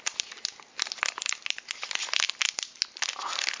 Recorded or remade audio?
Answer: recorded